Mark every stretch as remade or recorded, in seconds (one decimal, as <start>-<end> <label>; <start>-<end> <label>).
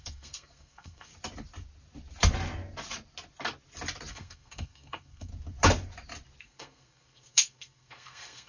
0.0-1.1 remade; 1.1-4.1 recorded; 4.1-5.3 remade; 5.3-6.4 recorded; 6.4-8.5 remade